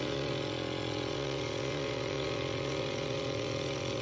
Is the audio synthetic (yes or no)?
yes